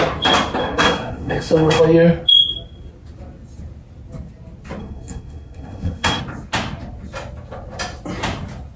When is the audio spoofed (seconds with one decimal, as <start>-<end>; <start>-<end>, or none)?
0.6-1.8; 4.8-6.2